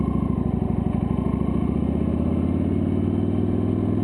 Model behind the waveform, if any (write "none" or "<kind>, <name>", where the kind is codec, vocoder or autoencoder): none